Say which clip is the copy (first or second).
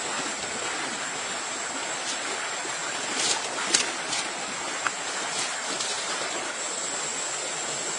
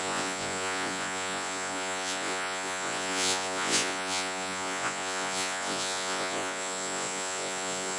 second